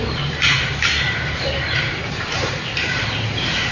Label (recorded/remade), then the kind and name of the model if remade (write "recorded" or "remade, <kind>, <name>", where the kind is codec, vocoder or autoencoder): remade, vocoder, BigVGAN v2